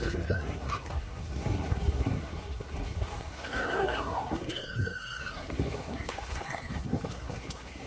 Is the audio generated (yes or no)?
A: yes